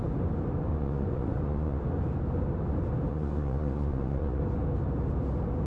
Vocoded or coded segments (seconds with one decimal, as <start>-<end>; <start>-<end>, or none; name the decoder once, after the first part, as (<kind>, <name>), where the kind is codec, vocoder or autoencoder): 0.7-1.8 (vocoder, Vocos); 3.1-4.4